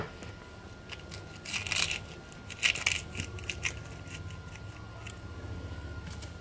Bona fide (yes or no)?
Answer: yes